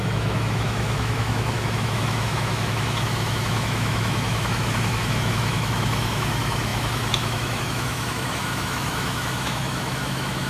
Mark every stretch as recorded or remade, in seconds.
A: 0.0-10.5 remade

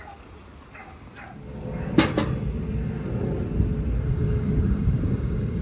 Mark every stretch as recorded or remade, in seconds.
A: 0.0-4.1 recorded; 4.1-5.6 remade

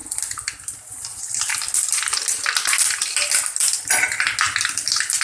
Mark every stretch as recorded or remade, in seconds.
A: 0.0-5.2 recorded

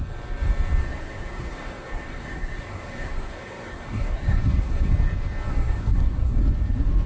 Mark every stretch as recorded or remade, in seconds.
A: 0.0-0.8 recorded; 0.8-4.9 remade; 4.9-5.5 recorded; 5.5-6.4 remade; 6.4-7.1 recorded

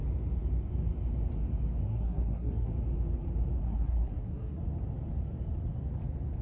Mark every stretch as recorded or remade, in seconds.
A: 0.0-1.8 recorded; 1.8-2.7 remade; 2.7-3.6 recorded; 3.6-4.6 remade; 4.6-6.4 recorded

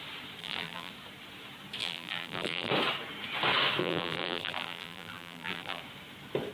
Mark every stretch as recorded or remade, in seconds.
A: 0.0-0.4 recorded; 0.4-0.9 remade; 0.9-1.8 recorded; 1.8-2.7 remade; 2.7-3.8 recorded; 3.8-5.8 remade; 5.8-6.5 recorded

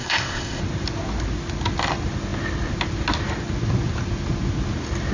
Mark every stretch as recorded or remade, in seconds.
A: 0.0-0.6 remade; 0.6-5.1 recorded